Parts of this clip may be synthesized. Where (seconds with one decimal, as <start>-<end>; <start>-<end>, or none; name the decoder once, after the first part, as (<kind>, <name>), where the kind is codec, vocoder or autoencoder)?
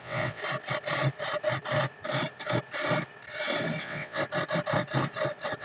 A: 0.0-0.4 (vocoder, WaveNeXt); 3.8-4.2